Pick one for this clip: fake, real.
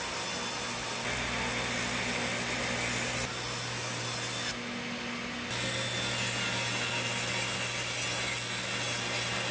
real